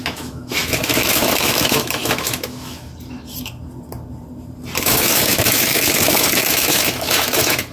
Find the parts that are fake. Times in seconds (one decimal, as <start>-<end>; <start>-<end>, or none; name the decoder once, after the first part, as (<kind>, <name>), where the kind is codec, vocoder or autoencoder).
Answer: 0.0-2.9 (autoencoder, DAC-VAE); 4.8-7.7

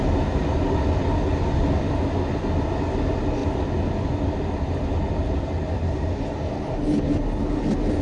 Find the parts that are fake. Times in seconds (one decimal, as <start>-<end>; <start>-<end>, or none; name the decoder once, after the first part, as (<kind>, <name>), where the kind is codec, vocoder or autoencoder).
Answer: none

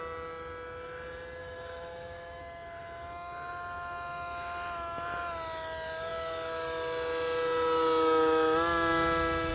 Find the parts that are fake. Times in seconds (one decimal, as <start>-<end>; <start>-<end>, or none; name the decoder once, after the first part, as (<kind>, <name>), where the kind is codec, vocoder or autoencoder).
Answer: 1.4-2.4 (autoencoder, DAC-VAE)